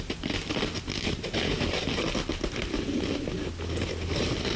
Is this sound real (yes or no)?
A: yes